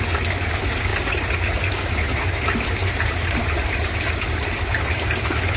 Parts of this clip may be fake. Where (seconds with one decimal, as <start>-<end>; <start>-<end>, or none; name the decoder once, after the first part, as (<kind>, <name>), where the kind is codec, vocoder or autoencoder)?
0.9-4.3 (vocoder, BigVGAN v2); 4.7-5.6